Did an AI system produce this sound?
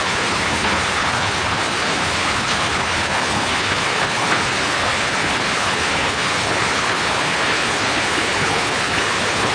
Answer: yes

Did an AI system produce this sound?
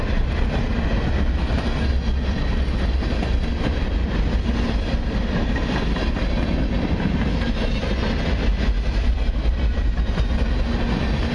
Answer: no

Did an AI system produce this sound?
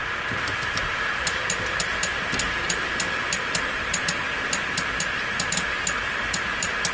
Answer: no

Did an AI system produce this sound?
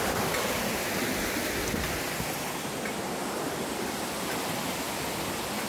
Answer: no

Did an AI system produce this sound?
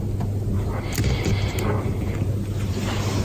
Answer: no